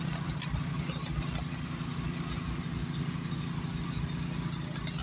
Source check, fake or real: real